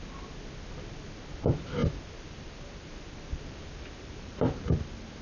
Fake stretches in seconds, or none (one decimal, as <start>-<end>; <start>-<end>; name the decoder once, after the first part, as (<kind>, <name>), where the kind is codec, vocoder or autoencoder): 1.8-5.2 (vocoder, BigVGAN v2)